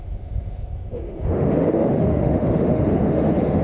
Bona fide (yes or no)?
no